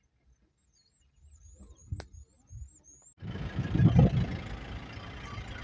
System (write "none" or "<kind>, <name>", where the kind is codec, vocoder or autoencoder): none